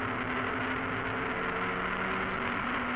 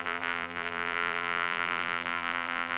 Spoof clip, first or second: second